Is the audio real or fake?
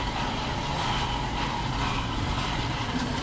real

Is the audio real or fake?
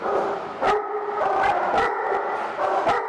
real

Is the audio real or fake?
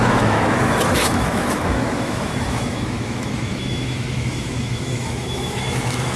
fake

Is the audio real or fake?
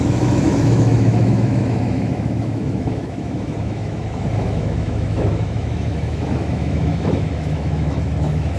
fake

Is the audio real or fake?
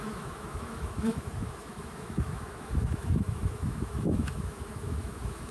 fake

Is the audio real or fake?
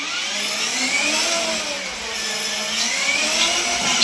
real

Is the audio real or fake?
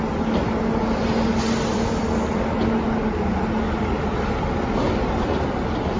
real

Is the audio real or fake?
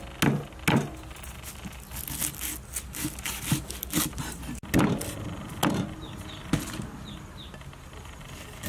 real